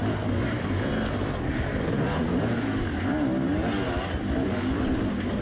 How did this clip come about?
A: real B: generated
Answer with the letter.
A